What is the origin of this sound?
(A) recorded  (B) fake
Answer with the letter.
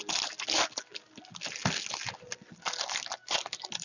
A